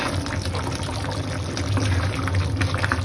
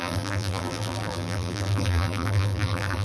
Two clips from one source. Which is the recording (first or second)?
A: first